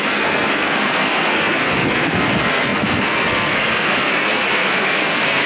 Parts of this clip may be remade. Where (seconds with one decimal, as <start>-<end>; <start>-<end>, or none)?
0.0-5.5